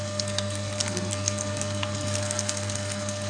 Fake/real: fake